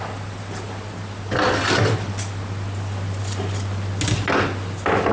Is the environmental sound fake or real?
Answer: real